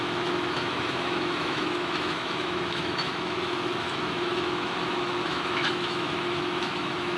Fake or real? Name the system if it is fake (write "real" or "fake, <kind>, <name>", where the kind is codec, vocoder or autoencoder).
fake, autoencoder, DAC-VAE